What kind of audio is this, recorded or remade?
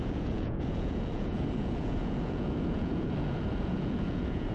remade